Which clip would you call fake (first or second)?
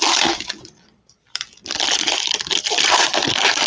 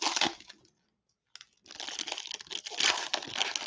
first